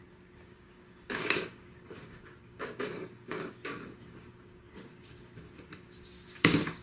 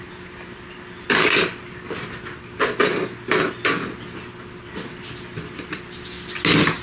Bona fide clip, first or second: second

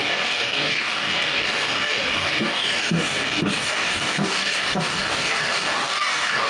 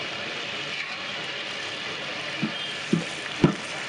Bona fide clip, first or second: second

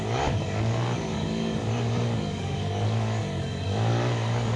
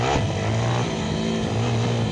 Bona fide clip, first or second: second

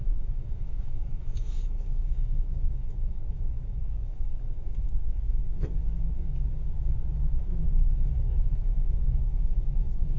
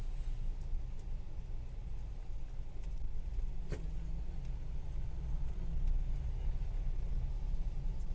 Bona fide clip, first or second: second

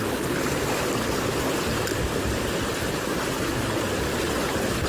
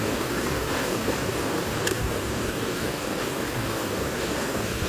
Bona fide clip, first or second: first